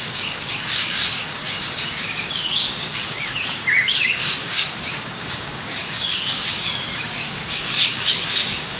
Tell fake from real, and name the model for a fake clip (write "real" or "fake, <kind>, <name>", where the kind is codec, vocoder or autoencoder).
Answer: fake, codec, DAC